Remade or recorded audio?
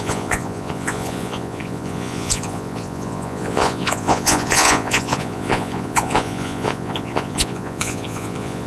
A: remade